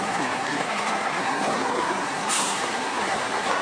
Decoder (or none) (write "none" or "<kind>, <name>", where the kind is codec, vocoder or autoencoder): codec, SNAC